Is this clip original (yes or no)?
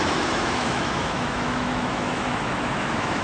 no